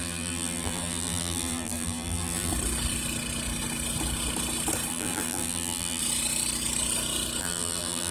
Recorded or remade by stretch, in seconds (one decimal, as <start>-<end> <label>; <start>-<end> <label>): 0.0-2.5 remade; 2.5-4.9 recorded; 4.9-6.0 remade; 6.0-7.4 recorded; 7.4-8.1 remade